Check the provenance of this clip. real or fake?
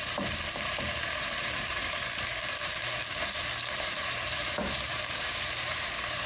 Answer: fake